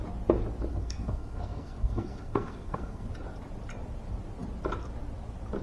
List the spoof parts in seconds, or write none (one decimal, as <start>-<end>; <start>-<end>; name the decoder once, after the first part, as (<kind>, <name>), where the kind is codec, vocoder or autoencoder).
0.7-3.1 (codec, SNAC)